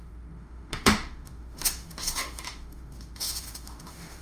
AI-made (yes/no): yes